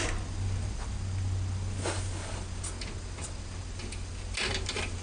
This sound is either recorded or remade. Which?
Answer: recorded